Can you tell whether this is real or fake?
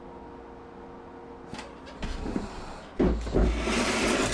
real